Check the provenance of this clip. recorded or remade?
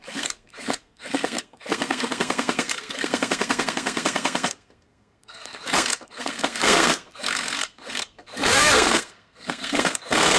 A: remade